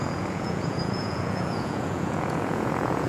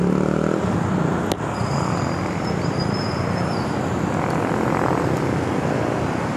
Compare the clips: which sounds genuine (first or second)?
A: second